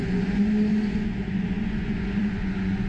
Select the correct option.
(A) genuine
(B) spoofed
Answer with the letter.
B